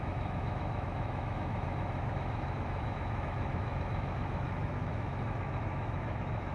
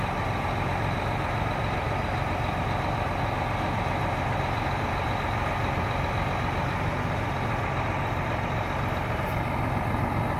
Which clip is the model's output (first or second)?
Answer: first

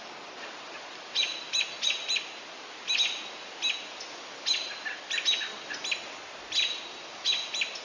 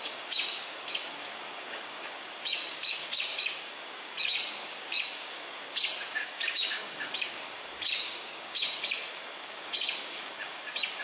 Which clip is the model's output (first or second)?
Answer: second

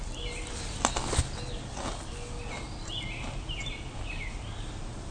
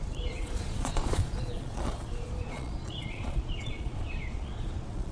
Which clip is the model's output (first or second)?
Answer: second